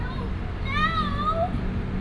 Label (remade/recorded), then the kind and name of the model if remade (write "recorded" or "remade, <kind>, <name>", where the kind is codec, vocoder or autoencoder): recorded